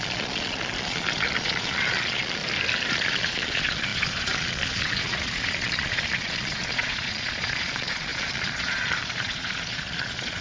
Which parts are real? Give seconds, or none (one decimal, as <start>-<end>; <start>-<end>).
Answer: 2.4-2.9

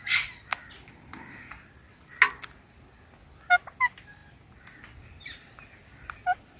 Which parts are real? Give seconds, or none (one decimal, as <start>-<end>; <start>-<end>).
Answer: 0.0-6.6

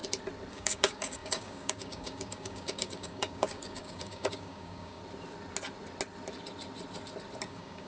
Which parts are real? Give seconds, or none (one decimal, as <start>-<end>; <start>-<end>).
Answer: 0.0-0.5; 5.0-7.4